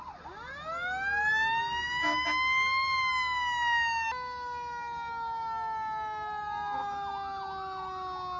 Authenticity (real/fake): real